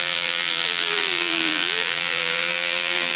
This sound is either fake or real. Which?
fake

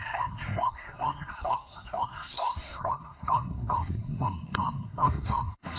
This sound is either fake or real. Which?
fake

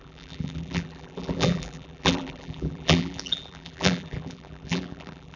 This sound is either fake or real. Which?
fake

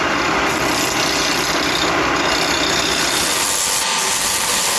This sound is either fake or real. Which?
real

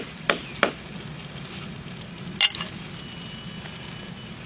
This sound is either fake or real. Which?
real